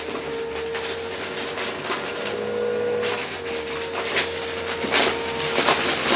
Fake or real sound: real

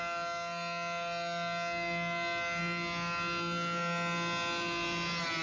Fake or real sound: real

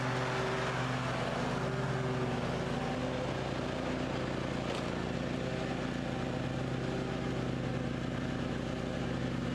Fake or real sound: real